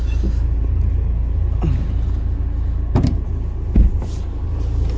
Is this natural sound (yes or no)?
yes